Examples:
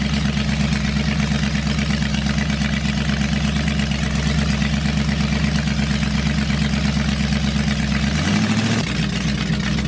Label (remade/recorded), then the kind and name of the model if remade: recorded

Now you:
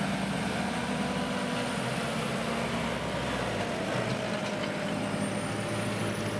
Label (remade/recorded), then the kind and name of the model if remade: recorded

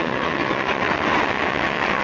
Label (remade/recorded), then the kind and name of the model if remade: remade, vocoder, WaveNeXt